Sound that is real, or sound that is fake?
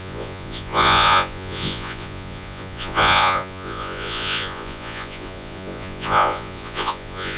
fake